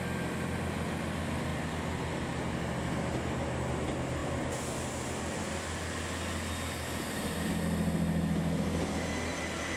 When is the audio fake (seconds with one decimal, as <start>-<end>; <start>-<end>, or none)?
none